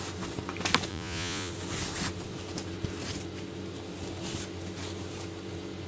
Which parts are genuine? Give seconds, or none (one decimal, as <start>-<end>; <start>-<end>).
0.0-0.9; 1.5-5.9